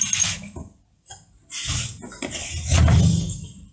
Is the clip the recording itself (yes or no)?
yes